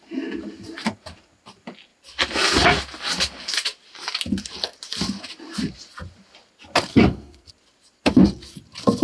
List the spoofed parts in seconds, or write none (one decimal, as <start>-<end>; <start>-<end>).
6.9-7.5